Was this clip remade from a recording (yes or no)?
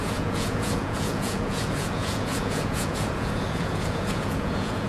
yes